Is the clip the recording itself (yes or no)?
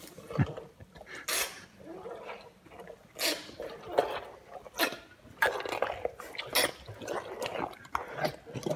yes